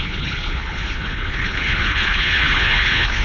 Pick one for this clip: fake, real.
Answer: fake